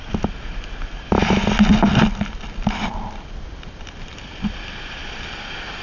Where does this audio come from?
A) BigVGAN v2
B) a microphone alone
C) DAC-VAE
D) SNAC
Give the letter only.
B